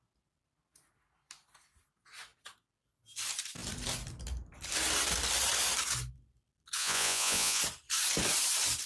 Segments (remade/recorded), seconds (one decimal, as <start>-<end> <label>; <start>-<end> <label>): 0.0-6.8 recorded; 6.8-7.6 remade; 7.6-8.9 recorded